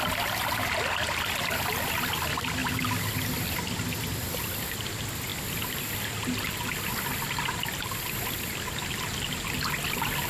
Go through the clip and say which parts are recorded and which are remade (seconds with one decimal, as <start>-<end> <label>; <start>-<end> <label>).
0.0-10.3 recorded